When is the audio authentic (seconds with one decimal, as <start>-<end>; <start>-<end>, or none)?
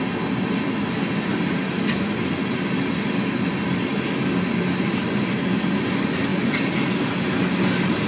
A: 0.0-8.1